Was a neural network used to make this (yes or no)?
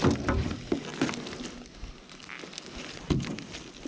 no